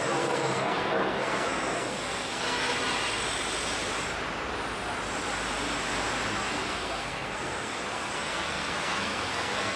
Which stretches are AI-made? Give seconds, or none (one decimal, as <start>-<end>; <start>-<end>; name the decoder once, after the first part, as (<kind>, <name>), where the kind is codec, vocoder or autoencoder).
0.0-2.7 (codec, SNAC); 6.4-9.8